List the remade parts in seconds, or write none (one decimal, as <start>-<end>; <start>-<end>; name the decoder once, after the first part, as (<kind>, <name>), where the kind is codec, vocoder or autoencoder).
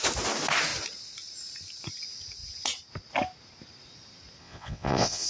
4.4-5.3 (vocoder, WaveNeXt)